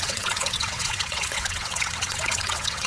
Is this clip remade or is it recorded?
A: remade